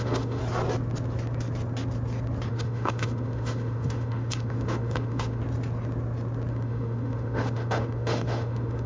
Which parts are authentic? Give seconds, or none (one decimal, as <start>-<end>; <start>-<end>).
0.4-2.5; 5.4-6.5